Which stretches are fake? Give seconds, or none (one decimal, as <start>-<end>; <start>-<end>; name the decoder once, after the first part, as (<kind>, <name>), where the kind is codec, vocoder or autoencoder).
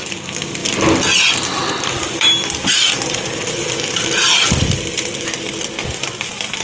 none